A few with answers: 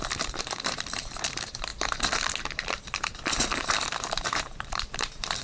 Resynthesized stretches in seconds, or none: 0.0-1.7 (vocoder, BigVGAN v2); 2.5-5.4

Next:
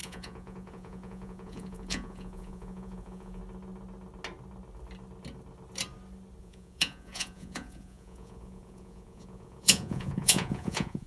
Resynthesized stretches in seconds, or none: 0.0-3.4 (vocoder, Vocos); 6.4-11.1

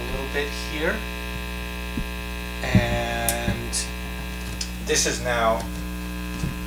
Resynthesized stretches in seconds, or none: none

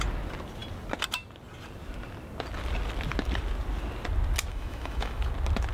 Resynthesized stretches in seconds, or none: 4.5-5.3 (autoencoder, DAC-VAE)

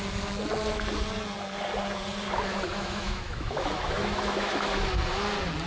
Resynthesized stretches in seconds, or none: 2.5-5.0 (autoencoder, DAC-VAE)

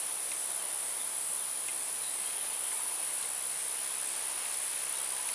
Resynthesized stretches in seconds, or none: none

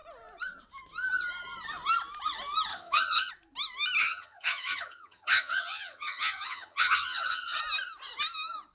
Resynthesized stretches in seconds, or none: 2.7-3.3 (vocoder, HiFi-GAN); 4.0-7.6